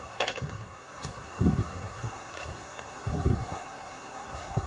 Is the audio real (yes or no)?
no